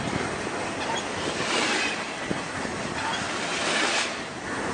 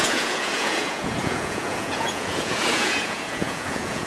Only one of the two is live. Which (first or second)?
first